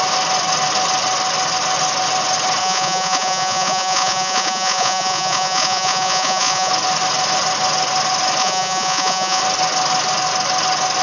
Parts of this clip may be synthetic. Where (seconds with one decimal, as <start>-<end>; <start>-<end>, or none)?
2.6-6.7; 8.4-9.4